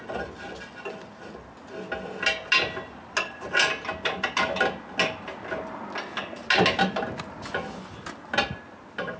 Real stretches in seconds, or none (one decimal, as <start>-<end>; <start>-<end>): 0.0-9.2